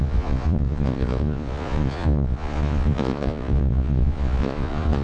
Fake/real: fake